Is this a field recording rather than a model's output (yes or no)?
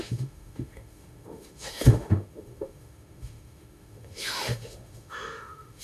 no